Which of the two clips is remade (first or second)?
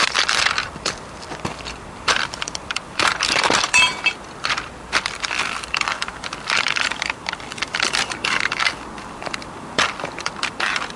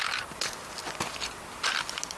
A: first